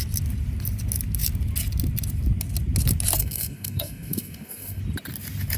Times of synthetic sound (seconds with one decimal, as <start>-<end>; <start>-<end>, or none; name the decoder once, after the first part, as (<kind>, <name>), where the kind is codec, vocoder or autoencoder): 3.2-4.8 (codec, SNAC)